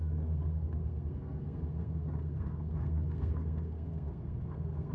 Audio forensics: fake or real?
fake